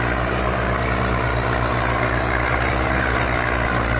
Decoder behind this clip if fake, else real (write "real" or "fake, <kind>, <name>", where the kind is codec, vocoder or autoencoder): real